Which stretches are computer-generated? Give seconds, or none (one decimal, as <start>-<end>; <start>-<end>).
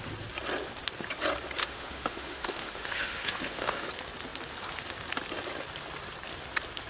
1.6-3.9